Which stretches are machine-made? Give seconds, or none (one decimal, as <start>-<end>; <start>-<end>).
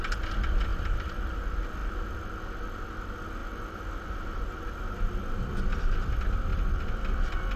0.7-1.4; 3.4-5.6